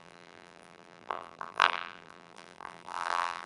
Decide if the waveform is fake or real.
fake